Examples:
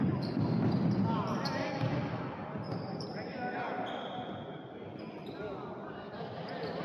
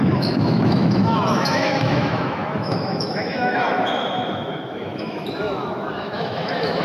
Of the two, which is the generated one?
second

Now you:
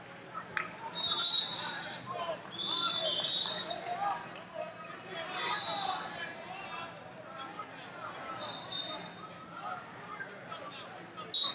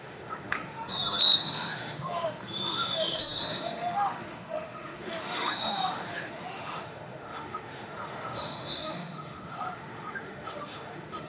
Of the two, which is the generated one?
second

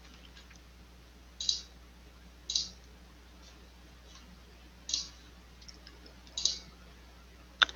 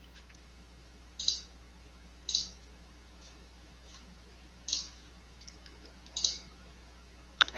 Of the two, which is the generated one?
second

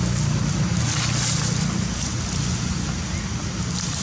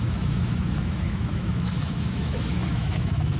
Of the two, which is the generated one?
second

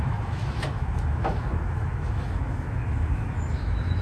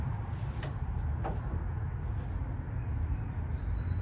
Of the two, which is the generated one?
first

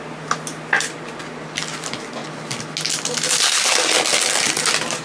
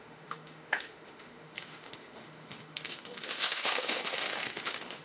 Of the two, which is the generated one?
second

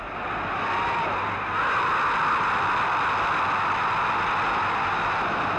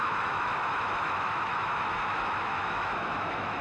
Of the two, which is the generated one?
second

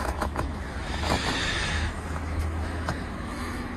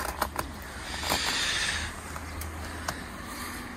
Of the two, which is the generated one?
first